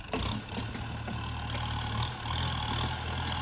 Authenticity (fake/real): real